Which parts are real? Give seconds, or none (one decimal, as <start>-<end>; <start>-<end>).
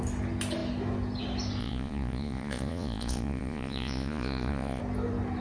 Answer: 0.0-1.6; 4.8-5.4